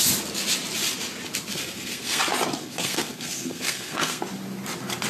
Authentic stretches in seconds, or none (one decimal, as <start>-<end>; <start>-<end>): 0.0-1.5; 2.2-2.6; 4.2-5.1

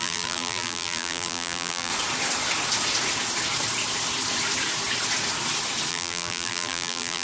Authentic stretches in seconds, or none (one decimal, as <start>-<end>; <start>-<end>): 1.9-5.9

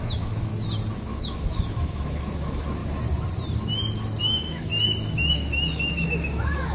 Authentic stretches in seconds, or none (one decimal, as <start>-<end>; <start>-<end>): 0.5-1.0; 2.8-4.2; 4.7-5.3

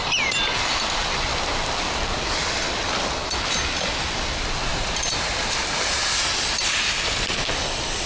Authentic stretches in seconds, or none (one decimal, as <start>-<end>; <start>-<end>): 0.0-4.7; 6.3-8.1

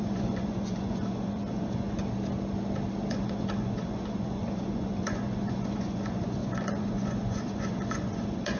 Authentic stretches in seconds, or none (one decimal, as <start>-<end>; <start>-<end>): 2.0-3.1

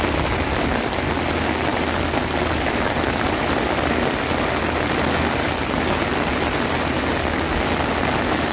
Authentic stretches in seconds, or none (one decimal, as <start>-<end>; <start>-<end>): 0.0-8.5